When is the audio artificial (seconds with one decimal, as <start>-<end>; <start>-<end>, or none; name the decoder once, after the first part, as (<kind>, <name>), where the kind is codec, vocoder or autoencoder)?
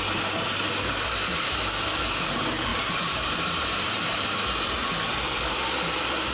1.3-2.3 (vocoder, BigVGAN v2); 2.7-4.0